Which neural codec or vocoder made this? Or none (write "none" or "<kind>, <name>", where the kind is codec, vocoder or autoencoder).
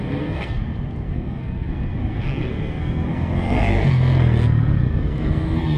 codec, SNAC